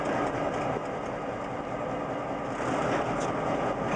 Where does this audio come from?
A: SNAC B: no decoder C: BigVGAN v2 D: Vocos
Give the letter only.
B